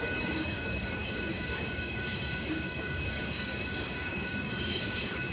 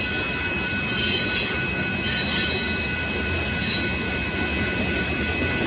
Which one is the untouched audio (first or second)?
second